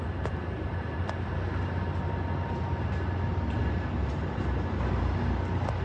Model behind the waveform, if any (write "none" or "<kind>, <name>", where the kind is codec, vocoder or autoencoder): none